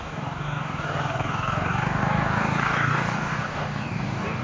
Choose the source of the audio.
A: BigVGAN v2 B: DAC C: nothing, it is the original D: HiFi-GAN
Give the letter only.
B